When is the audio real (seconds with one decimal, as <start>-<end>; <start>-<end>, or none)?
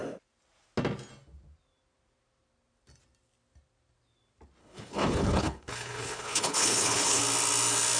0.0-4.6; 7.2-8.0